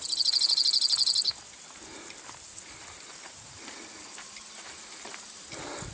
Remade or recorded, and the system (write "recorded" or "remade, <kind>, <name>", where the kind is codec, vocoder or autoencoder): recorded